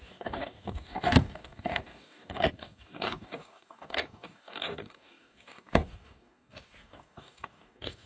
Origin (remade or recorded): remade